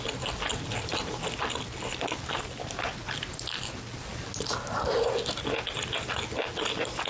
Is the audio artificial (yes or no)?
no